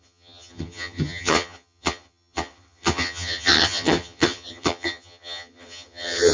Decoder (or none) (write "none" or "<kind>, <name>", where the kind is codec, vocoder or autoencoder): vocoder, HiFi-GAN